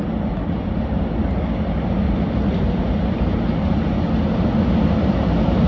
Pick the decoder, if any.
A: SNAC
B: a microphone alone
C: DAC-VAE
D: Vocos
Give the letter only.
B